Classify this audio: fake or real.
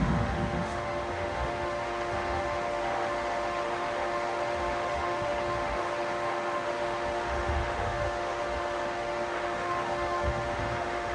fake